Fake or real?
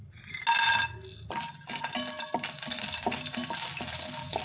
real